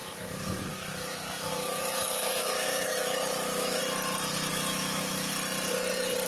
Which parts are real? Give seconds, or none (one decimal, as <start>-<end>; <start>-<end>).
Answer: 3.8-4.5; 5.3-6.3